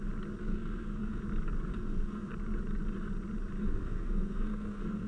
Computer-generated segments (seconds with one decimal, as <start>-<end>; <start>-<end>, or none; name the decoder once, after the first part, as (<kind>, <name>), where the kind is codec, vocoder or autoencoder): 0.4-1.2 (codec, SNAC); 1.7-2.3; 3.6-5.1

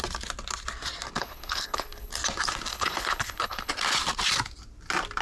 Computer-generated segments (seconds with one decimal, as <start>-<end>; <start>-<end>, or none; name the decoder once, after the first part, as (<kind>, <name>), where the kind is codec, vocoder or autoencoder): 1.2-2.1 (codec, HILCodec); 2.7-3.7